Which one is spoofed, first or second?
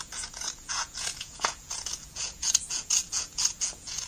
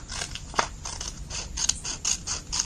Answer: first